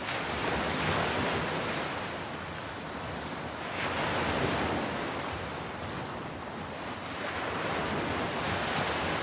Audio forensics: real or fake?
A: real